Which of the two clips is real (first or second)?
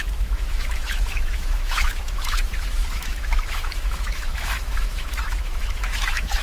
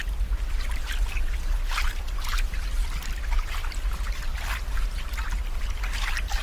second